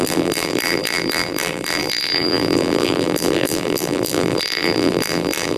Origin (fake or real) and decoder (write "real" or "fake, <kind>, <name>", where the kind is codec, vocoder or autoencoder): fake, vocoder, BigVGAN v2